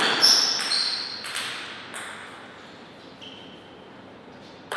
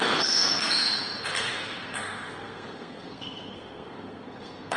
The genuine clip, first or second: first